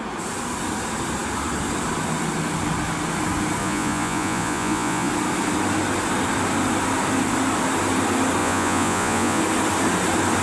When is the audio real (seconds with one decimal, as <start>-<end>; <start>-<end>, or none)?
0.0-3.6; 5.1-8.4; 9.4-10.4

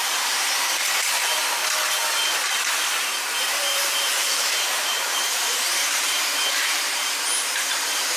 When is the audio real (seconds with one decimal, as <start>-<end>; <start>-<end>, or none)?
1.6-2.5

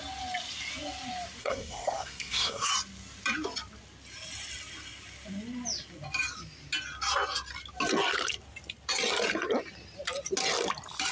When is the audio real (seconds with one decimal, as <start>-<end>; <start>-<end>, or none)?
0.0-1.4; 2.7-11.1

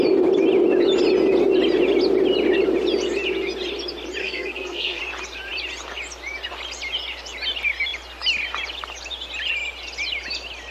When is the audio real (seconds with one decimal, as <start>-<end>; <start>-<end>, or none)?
0.0-4.2; 5.0-10.7

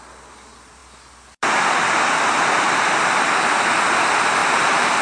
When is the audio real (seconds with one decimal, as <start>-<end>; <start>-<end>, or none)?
0.0-5.0

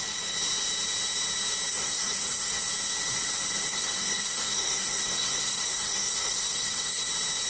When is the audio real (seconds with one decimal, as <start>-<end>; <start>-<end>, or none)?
0.0-1.7; 2.6-3.7; 7.1-7.5